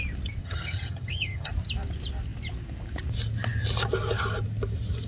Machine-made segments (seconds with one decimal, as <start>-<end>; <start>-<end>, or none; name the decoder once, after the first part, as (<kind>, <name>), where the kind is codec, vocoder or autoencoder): 0.4-1.5 (vocoder, HiFi-GAN)